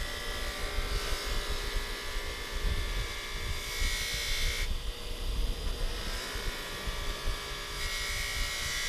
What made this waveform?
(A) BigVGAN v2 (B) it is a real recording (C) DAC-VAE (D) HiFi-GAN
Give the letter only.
B